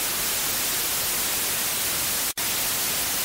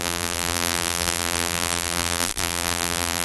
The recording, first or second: first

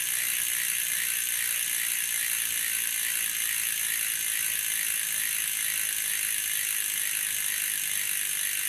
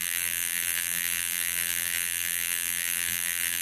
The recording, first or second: first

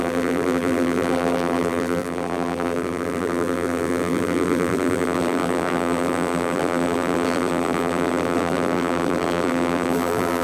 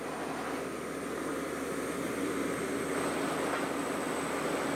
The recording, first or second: second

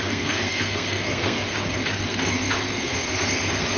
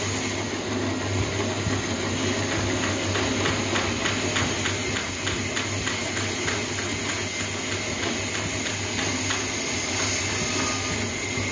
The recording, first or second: second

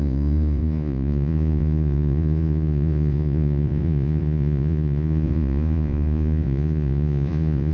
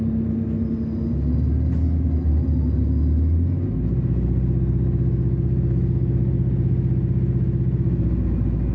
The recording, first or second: second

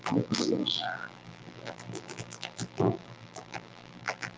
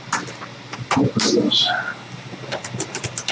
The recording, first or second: second